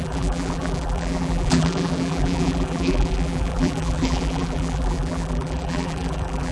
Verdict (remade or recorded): remade